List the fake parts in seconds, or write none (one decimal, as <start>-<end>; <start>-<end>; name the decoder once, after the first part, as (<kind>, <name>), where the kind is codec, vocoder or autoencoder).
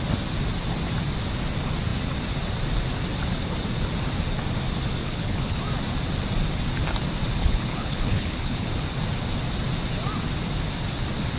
5.0-5.6 (codec, HILCodec); 7.4-8.7